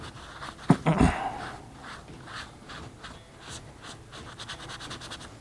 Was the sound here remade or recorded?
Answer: recorded